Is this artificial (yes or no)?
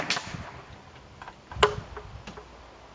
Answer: no